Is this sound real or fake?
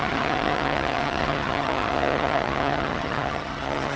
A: fake